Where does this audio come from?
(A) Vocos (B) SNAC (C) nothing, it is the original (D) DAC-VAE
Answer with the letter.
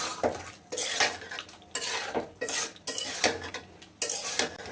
C